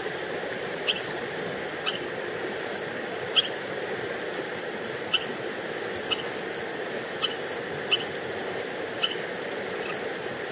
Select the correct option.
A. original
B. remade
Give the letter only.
A